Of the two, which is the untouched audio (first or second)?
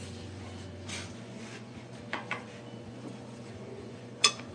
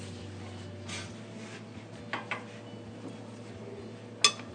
second